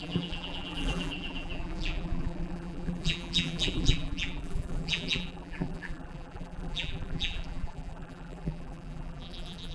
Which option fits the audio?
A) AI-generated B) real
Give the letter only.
A